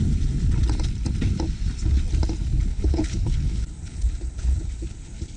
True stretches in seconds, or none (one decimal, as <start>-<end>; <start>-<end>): 0.0-2.7